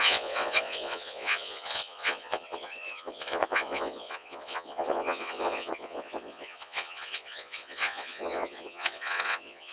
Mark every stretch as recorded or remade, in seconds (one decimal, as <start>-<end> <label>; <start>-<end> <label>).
0.0-9.7 remade